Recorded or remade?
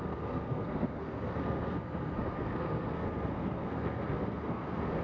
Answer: remade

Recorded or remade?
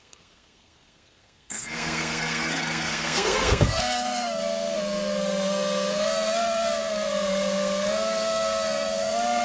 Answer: remade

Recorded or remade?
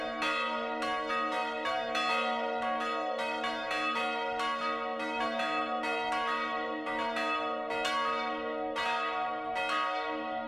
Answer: recorded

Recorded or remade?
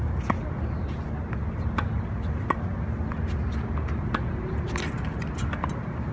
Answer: recorded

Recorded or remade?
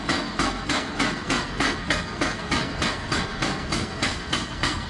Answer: remade